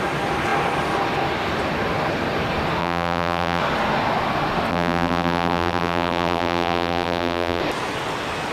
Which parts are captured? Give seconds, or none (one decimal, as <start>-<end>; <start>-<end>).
0.0-2.8; 3.6-4.7; 7.6-8.5